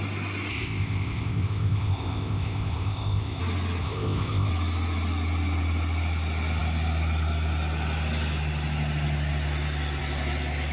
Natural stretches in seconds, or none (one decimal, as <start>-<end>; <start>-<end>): 0.0-0.5; 3.4-3.8; 4.5-10.7

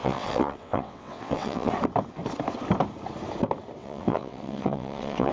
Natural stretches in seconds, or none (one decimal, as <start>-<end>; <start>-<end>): 1.7-3.8

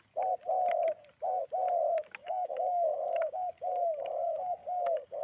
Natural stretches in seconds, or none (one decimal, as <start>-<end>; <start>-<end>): 0.0-2.2

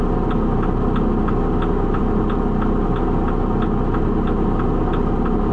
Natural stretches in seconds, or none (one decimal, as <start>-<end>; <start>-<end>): 0.0-5.5

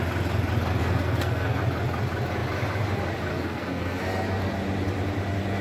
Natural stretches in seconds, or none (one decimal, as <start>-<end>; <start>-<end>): 0.0-0.8; 1.6-3.3; 4.0-5.6